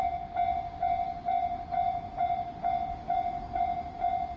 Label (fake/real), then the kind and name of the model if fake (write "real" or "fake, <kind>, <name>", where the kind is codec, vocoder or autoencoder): real